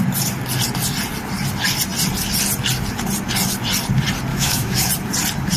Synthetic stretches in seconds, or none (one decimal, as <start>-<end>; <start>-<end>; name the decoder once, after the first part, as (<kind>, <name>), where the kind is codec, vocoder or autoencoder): 4.3-4.9 (autoencoder, DAC-VAE)